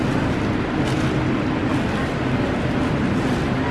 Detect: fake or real real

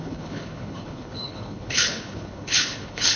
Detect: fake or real fake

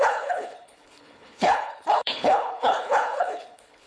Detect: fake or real fake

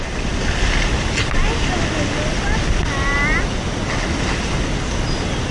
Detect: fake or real real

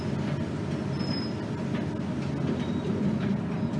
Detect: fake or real real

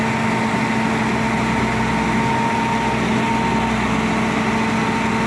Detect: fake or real real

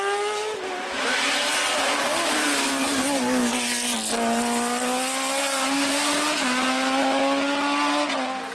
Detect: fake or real real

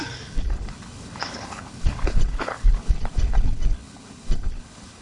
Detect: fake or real fake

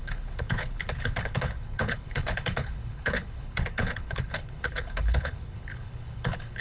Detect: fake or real fake